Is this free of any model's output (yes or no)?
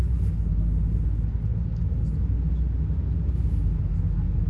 yes